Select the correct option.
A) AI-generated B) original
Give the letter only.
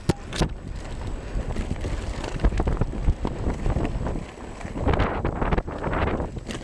B